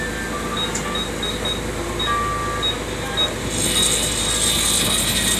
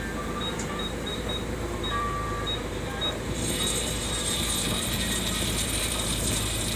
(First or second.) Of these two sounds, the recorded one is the first